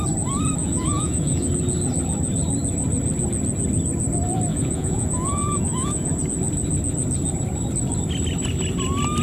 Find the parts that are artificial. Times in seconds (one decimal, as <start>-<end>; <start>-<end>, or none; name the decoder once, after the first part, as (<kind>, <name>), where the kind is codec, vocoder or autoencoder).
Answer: 0.6-1.5 (vocoder, Vocos); 4.5-6.2